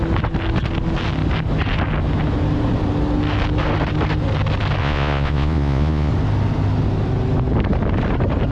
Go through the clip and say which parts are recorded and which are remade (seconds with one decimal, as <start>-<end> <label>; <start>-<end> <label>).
0.0-4.8 recorded; 4.8-6.1 remade; 6.1-8.5 recorded